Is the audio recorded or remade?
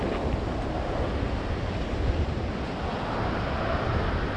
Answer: recorded